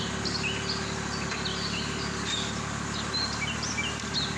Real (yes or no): yes